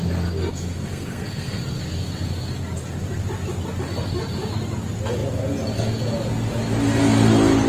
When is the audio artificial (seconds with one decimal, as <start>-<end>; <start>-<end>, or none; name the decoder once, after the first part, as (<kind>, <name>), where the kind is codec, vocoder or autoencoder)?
0.5-1.6 (codec, SNAC)